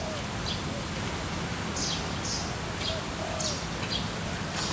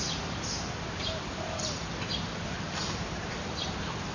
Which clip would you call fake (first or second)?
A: second